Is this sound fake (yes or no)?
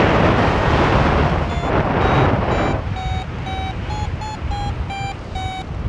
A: no